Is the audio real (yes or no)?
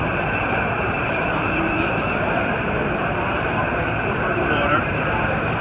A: no